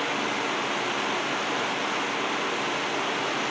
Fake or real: real